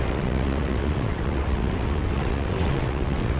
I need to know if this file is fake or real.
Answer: fake